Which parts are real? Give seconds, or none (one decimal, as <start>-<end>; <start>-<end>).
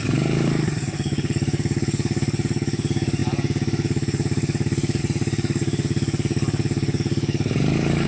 none